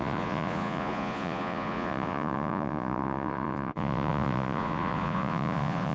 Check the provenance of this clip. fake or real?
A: fake